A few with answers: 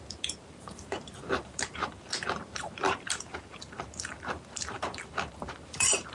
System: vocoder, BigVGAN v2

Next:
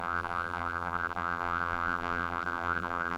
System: vocoder, BigVGAN v2